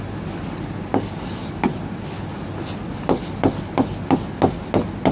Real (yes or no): yes